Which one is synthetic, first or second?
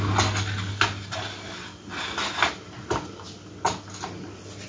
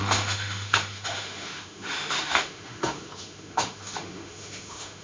second